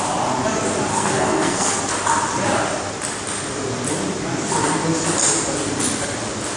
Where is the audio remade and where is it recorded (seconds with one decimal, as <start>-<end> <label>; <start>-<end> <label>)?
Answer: 0.0-0.9 recorded; 0.9-1.8 remade; 1.8-6.6 recorded